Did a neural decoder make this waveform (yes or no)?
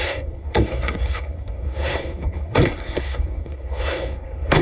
yes